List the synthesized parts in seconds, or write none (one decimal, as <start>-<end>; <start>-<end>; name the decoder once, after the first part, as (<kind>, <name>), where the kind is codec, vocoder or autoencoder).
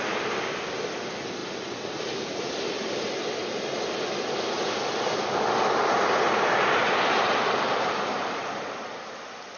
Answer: none